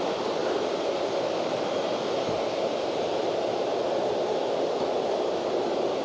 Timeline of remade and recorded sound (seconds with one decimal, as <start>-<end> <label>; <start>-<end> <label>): 0.0-6.0 recorded